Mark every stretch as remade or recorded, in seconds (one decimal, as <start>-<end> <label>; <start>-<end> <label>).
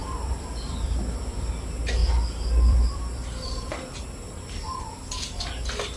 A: 0.0-1.5 remade; 1.5-2.0 recorded; 2.0-4.9 remade; 4.9-6.0 recorded